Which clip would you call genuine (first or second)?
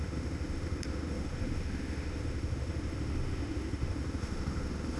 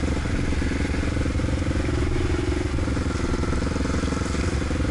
second